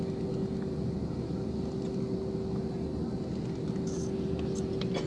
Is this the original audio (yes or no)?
yes